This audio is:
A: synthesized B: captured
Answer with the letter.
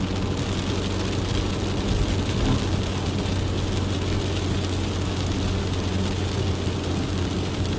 B